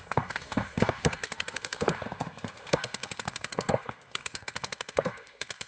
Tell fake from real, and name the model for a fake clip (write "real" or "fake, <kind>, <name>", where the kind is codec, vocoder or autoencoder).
fake, codec, SNAC